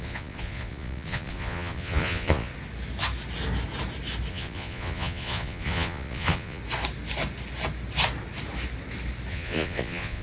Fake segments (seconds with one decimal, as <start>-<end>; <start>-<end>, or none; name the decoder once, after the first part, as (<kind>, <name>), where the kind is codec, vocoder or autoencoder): 0.0-2.5 (vocoder, Vocos); 4.3-6.6; 9.3-10.2